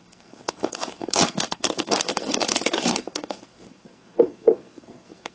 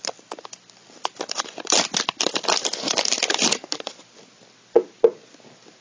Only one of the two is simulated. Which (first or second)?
first